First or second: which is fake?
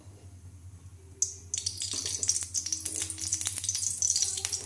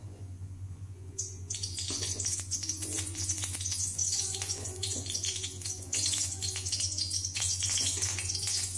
second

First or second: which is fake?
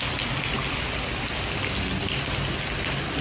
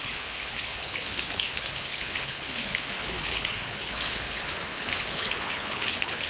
second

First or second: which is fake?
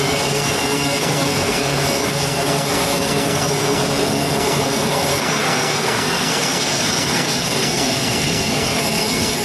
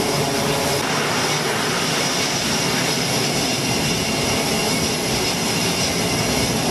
first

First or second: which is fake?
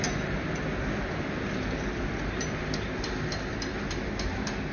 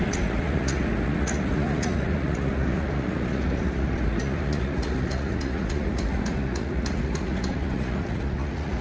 second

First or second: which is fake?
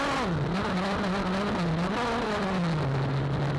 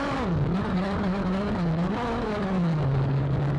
second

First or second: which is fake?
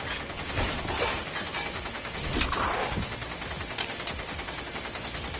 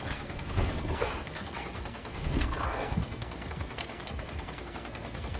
second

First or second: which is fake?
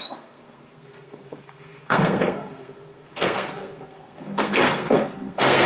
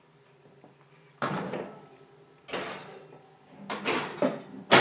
first